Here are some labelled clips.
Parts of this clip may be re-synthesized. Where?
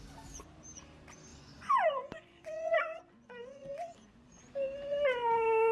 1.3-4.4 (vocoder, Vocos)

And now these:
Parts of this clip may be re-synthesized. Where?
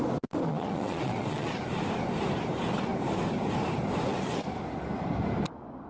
0.5-1.5 (vocoder, Vocos)